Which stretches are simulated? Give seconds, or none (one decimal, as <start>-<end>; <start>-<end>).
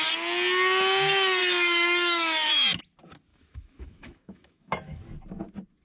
1.4-2.8; 3.3-5.0